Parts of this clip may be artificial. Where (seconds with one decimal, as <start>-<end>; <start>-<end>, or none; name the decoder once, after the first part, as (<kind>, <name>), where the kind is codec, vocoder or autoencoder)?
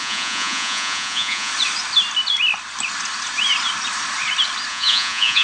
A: 0.0-1.5 (vocoder, Vocos); 4.7-5.4